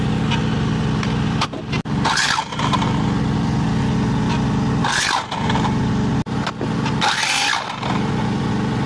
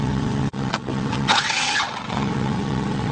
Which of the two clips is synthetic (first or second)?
second